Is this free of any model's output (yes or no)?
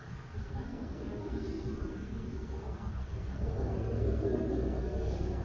no